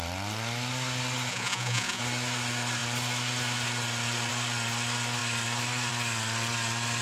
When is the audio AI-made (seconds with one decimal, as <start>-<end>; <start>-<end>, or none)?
1.3-2.0